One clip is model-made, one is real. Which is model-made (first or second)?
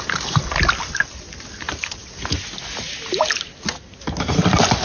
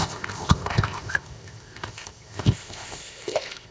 second